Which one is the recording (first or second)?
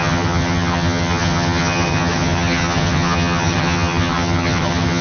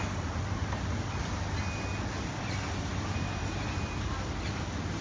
second